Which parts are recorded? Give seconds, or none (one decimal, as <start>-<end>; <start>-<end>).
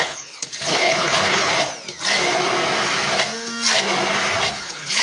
1.5-4.5